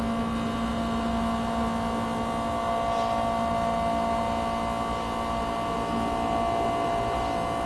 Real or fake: real